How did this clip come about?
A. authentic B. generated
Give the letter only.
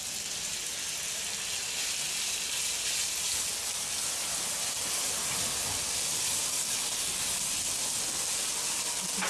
A